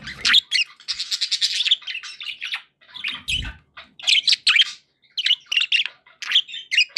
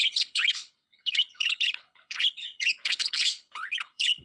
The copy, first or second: second